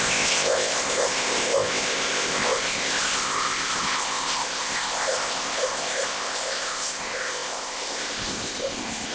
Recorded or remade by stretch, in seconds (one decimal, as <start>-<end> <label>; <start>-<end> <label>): 0.0-9.1 remade